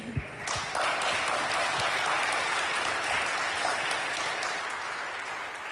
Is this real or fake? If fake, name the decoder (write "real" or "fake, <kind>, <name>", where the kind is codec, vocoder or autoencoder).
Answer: real